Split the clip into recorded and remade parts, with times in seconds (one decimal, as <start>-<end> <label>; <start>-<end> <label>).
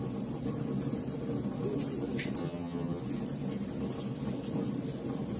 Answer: 0.0-2.4 recorded; 2.4-3.0 remade; 3.0-5.4 recorded